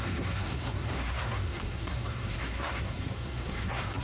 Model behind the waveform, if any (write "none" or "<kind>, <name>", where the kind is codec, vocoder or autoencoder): codec, SNAC